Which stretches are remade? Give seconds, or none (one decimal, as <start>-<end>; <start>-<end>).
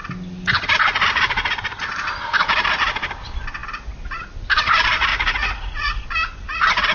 5.1-6.0